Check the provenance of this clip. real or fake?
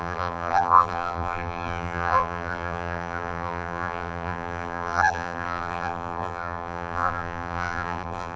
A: fake